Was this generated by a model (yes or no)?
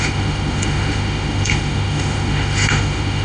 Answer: yes